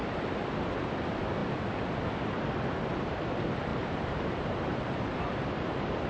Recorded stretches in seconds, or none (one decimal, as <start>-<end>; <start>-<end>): 0.9-3.7; 5.5-6.1